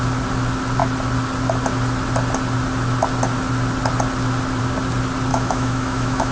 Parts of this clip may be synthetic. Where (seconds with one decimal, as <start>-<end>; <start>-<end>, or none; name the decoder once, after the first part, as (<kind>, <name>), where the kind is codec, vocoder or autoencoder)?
5.3-6.3 (autoencoder, DAC-VAE)